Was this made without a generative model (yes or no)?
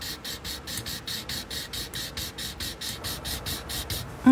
yes